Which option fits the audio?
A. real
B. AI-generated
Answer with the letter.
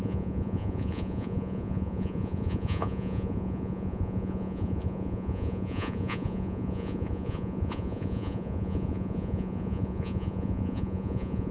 B